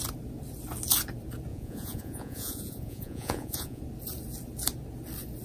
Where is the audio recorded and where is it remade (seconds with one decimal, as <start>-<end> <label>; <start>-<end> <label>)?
0.0-1.5 recorded; 1.5-3.8 remade; 3.8-5.4 recorded